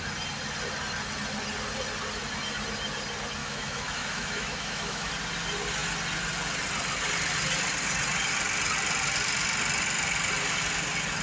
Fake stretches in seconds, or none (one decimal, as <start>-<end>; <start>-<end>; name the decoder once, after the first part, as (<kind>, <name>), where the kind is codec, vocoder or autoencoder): 3.4-5.1 (autoencoder, DAC-VAE)